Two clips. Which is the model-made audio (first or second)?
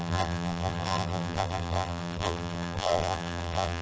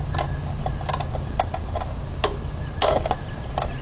first